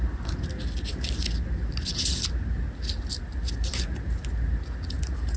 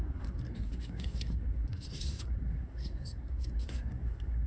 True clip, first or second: first